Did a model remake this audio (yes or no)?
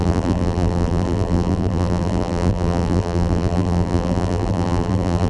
yes